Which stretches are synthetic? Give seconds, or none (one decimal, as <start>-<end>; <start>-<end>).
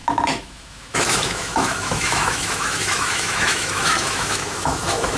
0.0-5.2